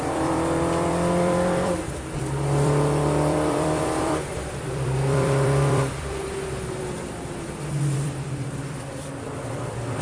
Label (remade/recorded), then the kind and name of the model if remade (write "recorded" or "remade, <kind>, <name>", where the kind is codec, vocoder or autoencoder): remade, vocoder, BigVGAN v2